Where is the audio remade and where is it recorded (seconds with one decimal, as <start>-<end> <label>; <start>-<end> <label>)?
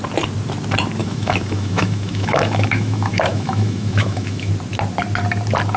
0.0-1.0 recorded; 1.0-4.5 remade; 4.5-5.8 recorded